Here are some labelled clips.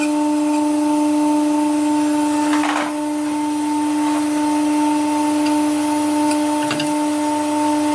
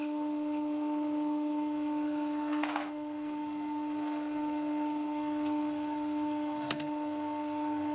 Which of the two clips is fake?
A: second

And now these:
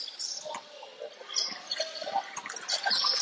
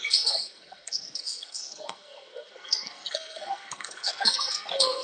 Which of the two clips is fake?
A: second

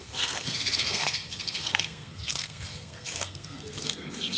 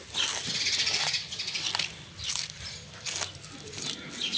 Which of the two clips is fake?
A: first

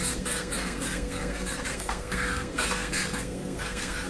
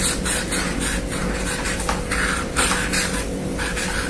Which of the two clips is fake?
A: first